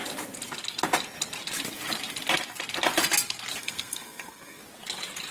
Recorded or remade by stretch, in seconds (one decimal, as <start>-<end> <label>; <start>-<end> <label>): 0.0-3.6 recorded; 3.6-4.6 remade; 4.6-5.3 recorded